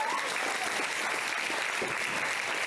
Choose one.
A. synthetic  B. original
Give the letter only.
B